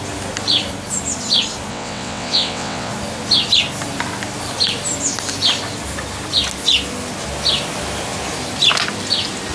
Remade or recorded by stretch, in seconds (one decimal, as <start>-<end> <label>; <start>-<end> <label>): 0.0-1.7 recorded; 1.7-2.9 remade; 2.9-9.5 recorded